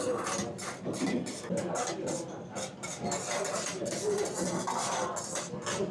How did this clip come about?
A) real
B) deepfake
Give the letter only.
A